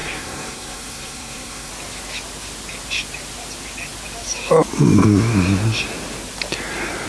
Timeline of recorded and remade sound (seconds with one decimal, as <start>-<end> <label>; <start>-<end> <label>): 0.0-1.7 remade; 1.7-7.1 recorded